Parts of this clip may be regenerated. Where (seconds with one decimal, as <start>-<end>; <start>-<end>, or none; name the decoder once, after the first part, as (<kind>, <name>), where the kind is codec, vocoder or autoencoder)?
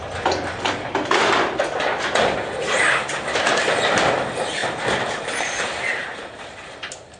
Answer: 4.6-7.2 (vocoder, BigVGAN v2)